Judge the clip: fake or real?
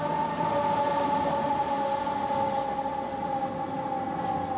real